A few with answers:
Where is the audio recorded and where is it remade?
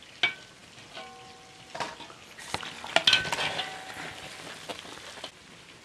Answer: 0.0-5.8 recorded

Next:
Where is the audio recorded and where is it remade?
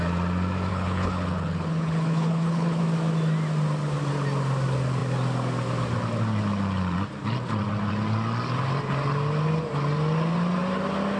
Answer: 0.0-0.7 recorded; 0.7-2.8 remade; 2.8-11.2 recorded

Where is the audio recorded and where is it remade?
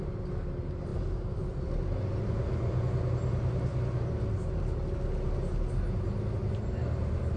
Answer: 0.0-7.4 recorded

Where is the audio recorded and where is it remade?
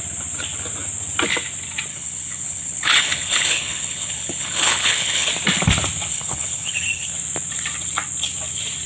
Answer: 0.0-1.9 recorded; 1.9-5.3 remade; 5.3-6.1 recorded; 6.1-7.1 remade; 7.1-8.9 recorded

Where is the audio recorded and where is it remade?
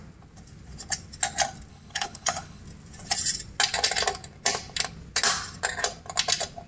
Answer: 0.0-1.7 recorded; 1.7-2.6 remade; 2.6-6.7 recorded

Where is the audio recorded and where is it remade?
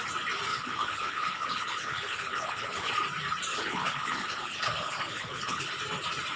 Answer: 0.0-0.5 recorded; 0.5-2.9 remade; 2.9-3.5 recorded; 3.5-5.7 remade; 5.7-6.4 recorded